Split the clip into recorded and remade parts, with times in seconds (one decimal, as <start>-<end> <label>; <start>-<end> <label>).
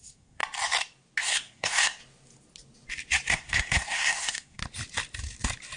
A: 0.0-0.4 remade; 0.4-1.2 recorded; 1.2-2.0 remade; 2.0-3.3 recorded; 3.3-4.6 remade; 4.6-5.8 recorded